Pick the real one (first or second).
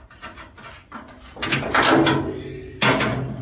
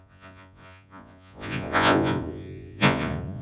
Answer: first